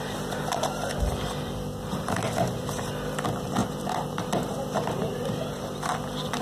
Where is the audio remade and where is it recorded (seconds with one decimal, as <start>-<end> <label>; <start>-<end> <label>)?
0.0-6.4 remade